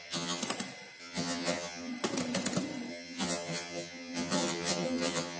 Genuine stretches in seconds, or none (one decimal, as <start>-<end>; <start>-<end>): 0.4-1.0; 1.9-2.9